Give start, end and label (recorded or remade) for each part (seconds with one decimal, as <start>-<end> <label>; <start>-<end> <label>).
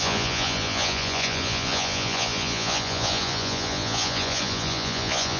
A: 0.0-5.4 remade